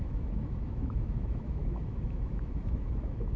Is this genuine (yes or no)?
no